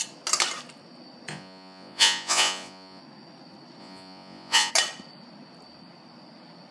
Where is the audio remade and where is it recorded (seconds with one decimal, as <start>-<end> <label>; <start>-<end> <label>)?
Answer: 0.0-1.3 recorded; 1.3-3.0 remade; 3.0-3.8 recorded; 3.8-4.7 remade; 4.7-6.7 recorded